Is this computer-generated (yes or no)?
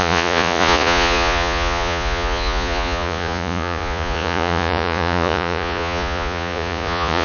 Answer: yes